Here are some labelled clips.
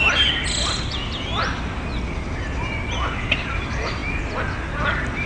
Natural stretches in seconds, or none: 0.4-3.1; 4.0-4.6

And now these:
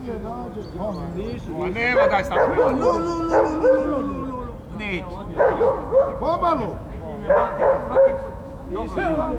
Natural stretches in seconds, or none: 0.4-2.9; 4.2-4.8

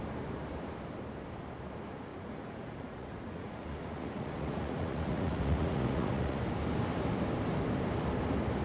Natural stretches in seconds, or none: 0.0-2.1; 6.4-8.6

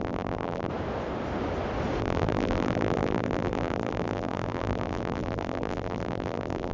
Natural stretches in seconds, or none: 0.7-2.0

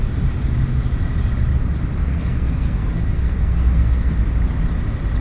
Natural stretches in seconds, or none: 0.0-2.0; 4.1-5.2

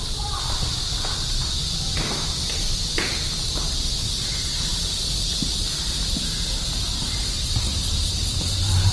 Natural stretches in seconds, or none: none